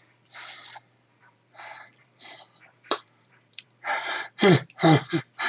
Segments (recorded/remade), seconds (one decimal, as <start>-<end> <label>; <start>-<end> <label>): 0.0-1.2 recorded; 1.2-4.5 remade; 4.5-5.5 recorded